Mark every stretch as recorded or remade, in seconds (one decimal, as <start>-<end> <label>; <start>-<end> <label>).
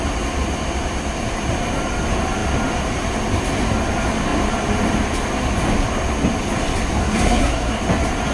0.0-7.0 recorded; 7.0-7.8 remade; 7.8-8.3 recorded